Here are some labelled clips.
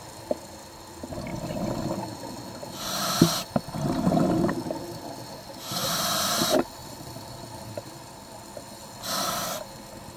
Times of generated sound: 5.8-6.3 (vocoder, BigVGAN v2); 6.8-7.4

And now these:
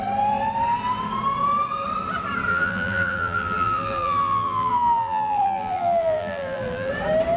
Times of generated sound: 2.5-6.9 (vocoder, BigVGAN v2)